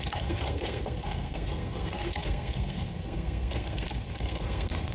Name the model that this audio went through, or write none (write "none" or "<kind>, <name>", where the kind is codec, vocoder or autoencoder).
codec, SNAC